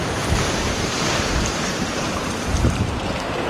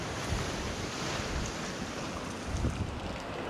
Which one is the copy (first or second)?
first